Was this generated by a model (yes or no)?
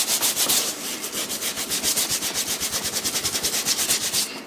no